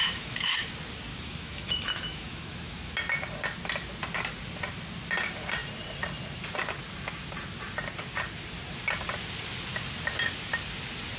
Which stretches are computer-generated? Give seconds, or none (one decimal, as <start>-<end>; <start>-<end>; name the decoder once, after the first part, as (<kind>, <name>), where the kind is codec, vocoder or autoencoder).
0.0-0.7 (autoencoder, DAC-VAE); 1.1-2.9